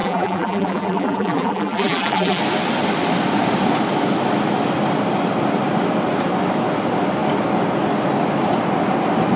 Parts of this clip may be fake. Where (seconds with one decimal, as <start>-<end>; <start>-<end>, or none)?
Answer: 0.0-2.4